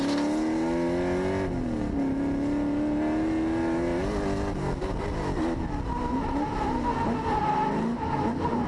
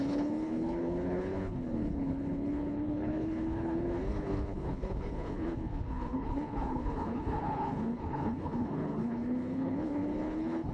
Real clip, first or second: first